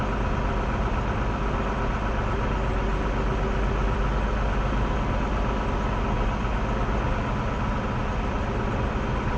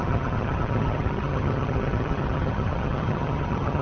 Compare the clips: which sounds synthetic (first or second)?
second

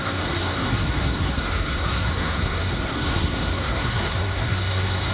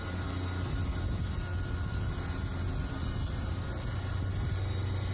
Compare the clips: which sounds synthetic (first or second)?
first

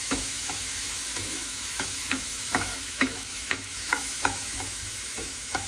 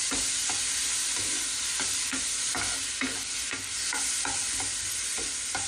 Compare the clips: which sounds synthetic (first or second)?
first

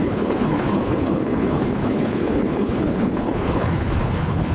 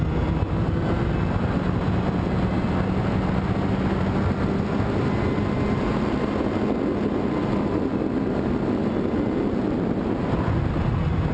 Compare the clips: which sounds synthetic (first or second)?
first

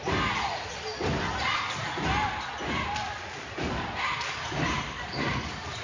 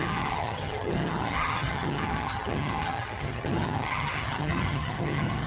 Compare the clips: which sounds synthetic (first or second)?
second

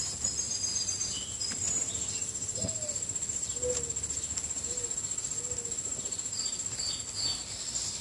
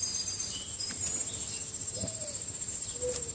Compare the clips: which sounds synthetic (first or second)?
second